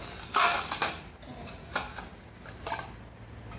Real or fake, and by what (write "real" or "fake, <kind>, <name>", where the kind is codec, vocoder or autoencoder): real